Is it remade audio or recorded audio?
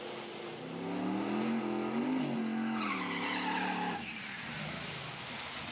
recorded